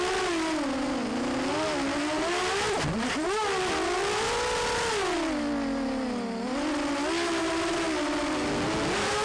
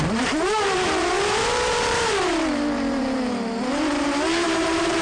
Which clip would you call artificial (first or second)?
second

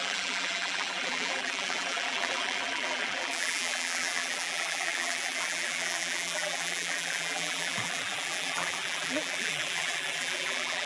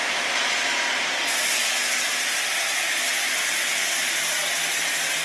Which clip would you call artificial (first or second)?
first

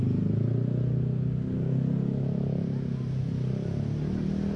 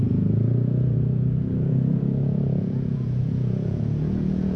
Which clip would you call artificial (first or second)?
second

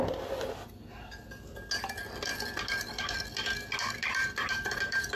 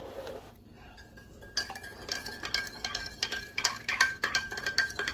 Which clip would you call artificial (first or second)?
second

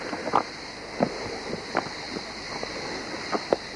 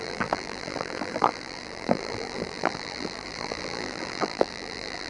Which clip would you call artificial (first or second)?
second